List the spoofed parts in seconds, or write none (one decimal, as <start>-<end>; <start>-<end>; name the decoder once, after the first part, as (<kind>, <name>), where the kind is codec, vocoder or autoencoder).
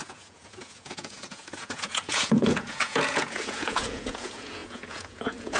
0.0-5.6 (vocoder, Vocos)